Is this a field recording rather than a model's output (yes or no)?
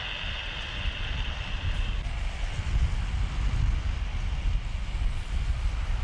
yes